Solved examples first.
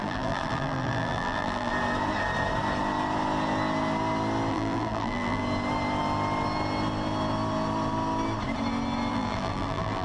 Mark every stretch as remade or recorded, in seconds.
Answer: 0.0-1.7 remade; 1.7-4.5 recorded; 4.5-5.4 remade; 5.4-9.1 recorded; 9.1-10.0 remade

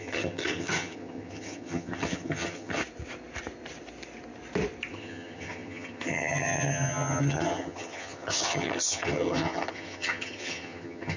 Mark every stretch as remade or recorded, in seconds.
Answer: 0.0-2.8 remade; 2.8-4.9 recorded; 4.9-11.2 remade

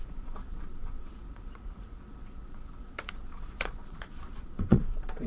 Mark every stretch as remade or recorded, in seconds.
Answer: 0.0-5.3 remade

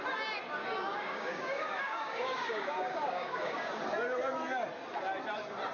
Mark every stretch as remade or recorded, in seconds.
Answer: 0.0-0.6 recorded; 0.6-3.7 remade; 3.7-5.7 recorded

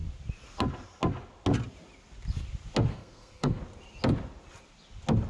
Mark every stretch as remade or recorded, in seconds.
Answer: 0.0-2.9 recorded; 2.9-3.6 remade; 3.6-5.3 recorded

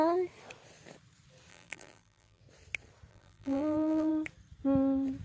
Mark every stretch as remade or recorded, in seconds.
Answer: 0.0-1.5 recorded; 1.5-2.4 remade; 2.4-3.1 recorded; 3.1-4.1 remade; 4.1-5.2 recorded

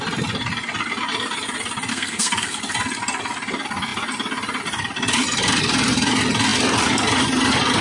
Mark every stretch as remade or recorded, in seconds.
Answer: 0.0-1.9 recorded; 1.9-2.6 remade; 2.6-7.8 recorded

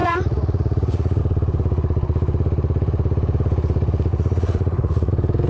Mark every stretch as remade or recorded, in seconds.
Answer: 0.0-1.2 remade; 1.2-4.1 recorded; 4.1-5.1 remade; 5.1-5.5 recorded